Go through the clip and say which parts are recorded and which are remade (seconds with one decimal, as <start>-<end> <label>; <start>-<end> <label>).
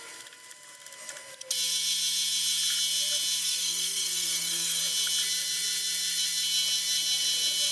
0.0-3.4 recorded; 3.4-4.8 remade; 4.8-7.7 recorded